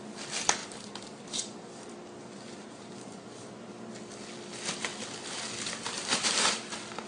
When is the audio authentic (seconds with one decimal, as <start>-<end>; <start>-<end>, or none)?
0.0-0.6; 3.5-7.1